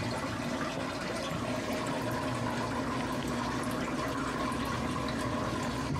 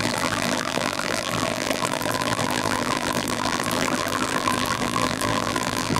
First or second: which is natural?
first